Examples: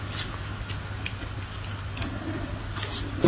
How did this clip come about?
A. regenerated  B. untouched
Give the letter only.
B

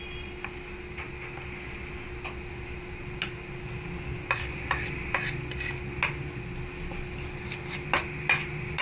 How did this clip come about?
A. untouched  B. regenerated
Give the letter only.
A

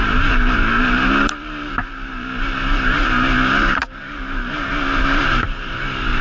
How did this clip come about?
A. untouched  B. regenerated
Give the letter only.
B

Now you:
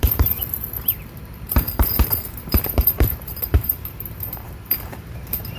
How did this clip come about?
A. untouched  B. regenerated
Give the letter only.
B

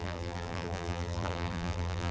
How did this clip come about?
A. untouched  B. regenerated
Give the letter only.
B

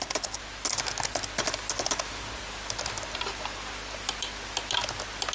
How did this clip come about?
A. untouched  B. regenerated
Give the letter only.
A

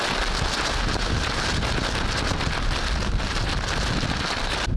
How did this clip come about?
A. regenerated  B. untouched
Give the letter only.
B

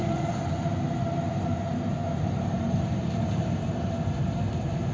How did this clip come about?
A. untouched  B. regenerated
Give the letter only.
B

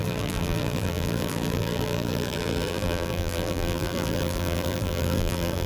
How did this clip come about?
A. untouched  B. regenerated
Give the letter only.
B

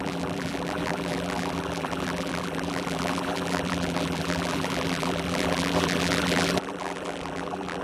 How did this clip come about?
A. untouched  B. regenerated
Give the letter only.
B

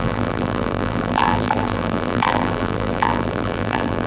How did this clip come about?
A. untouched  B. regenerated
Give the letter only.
B